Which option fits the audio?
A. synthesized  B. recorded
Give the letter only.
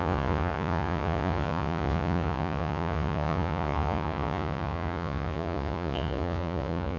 A